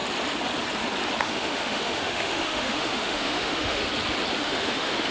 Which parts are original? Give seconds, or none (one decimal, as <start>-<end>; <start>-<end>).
0.0-1.2; 3.8-4.4